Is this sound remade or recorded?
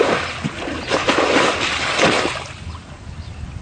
recorded